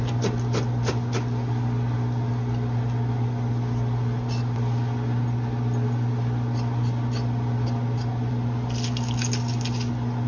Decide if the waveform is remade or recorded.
recorded